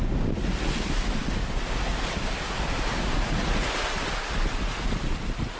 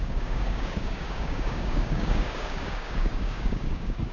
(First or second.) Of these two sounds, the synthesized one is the second